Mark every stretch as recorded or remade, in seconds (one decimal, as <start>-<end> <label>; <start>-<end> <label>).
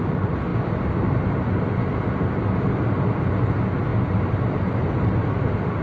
0.0-5.8 recorded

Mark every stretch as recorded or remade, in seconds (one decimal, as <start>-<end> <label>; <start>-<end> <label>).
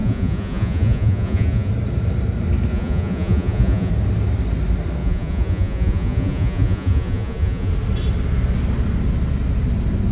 0.0-1.7 remade; 1.7-2.7 recorded; 2.7-3.9 remade; 3.9-5.0 recorded; 5.0-7.7 remade; 7.7-10.1 recorded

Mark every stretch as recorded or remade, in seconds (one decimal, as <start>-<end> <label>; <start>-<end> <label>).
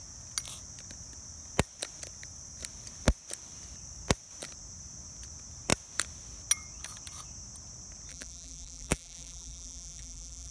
0.0-8.1 recorded; 8.1-10.5 remade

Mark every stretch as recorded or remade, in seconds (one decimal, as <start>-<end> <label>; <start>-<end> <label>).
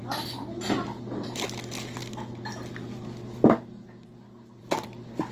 0.0-5.3 recorded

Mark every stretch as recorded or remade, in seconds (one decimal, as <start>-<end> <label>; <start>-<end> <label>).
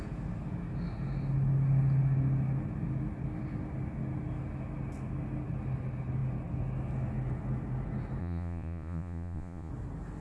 0.0-8.2 recorded; 8.2-9.7 remade; 9.7-10.2 recorded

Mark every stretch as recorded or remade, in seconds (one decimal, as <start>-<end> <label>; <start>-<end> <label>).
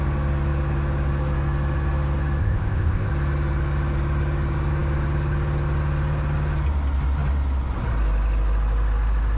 0.0-2.4 recorded; 2.4-3.1 remade; 3.1-9.4 recorded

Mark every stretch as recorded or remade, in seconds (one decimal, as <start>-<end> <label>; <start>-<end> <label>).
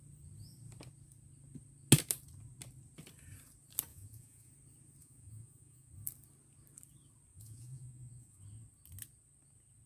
0.0-3.9 recorded; 3.9-4.5 remade; 4.5-5.0 recorded; 5.0-5.9 remade; 5.9-7.3 recorded; 7.3-8.4 remade; 8.4-9.9 recorded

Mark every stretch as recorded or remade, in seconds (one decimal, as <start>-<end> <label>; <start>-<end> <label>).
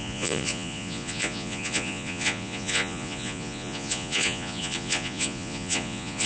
0.0-6.3 remade